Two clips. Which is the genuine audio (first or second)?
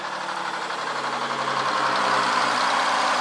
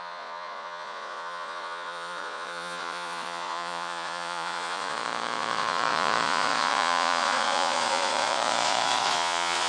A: first